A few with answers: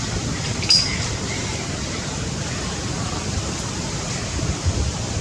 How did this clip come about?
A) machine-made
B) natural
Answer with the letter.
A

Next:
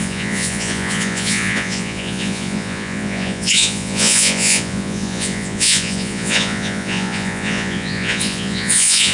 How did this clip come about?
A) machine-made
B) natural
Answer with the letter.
A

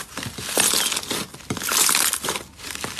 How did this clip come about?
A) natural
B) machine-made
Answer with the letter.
A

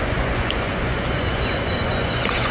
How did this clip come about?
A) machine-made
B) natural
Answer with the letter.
A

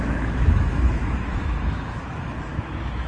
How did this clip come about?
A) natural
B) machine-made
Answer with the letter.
B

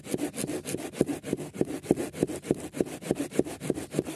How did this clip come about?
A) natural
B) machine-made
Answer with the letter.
A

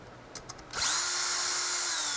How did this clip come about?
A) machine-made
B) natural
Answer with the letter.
B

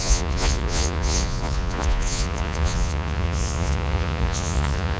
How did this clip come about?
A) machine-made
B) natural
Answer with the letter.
A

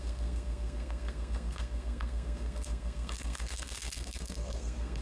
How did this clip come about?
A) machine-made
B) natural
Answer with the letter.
A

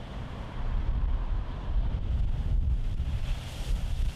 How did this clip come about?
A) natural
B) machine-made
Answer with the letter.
B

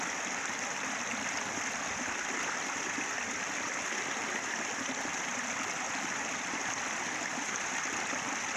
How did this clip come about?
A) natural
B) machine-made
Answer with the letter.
A